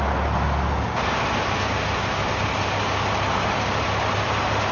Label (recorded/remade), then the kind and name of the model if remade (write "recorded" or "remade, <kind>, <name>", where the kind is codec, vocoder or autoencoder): recorded